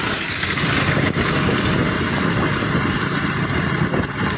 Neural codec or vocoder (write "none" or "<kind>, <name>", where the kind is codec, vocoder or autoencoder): none